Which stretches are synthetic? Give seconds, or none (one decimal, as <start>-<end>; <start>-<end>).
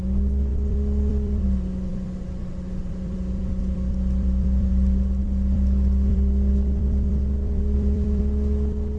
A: 0.5-4.7; 5.2-8.2